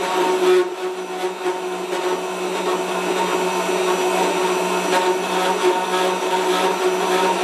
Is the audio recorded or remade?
recorded